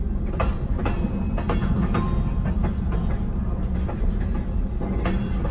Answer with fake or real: real